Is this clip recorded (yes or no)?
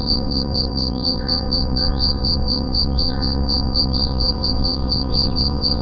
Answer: no